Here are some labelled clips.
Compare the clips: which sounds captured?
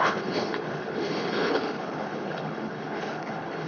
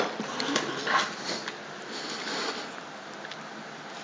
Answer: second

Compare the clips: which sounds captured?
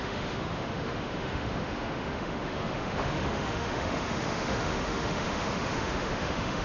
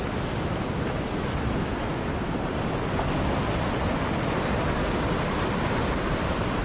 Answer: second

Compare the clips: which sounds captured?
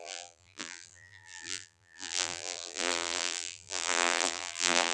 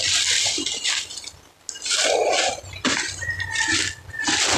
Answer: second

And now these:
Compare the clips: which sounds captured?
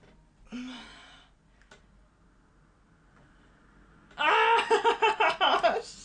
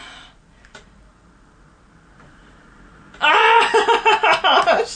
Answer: first